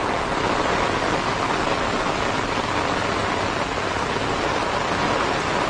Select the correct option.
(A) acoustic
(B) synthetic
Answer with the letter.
A